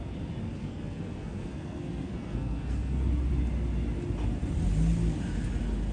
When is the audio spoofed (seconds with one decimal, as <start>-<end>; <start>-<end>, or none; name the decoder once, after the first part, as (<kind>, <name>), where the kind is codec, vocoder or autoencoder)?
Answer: 0.6-3.1 (codec, SNAC)